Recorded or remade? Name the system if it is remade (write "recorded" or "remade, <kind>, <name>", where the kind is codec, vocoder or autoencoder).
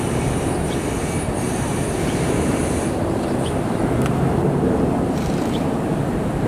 remade, vocoder, BigVGAN v2